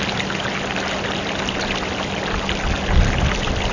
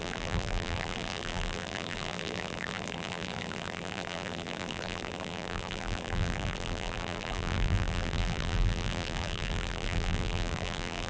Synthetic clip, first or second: second